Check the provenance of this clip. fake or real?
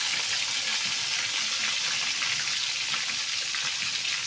real